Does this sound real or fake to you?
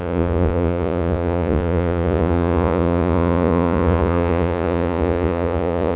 fake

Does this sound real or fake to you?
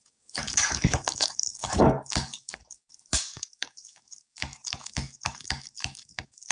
fake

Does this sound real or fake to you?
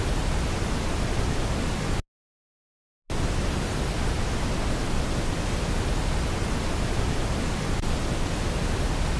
real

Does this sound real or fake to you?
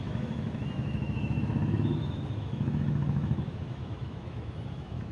fake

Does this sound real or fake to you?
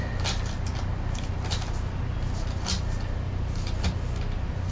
real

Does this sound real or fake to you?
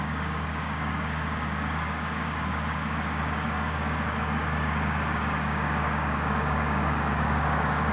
fake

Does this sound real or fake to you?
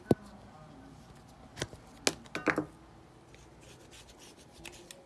real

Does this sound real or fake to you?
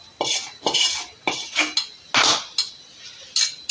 real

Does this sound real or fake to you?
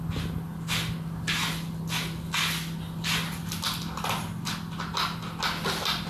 real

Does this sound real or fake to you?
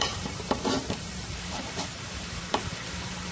fake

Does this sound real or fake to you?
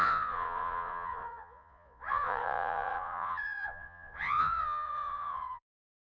fake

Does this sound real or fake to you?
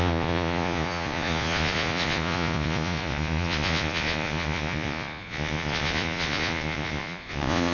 fake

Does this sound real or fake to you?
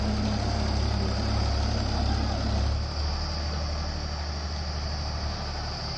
real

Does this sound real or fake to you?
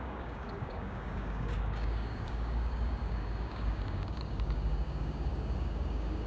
fake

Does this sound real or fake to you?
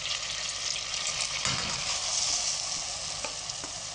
real